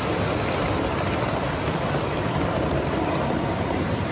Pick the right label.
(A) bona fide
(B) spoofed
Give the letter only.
A